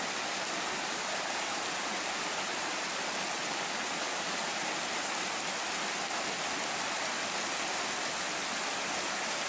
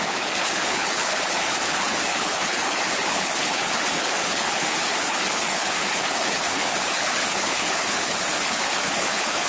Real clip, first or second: first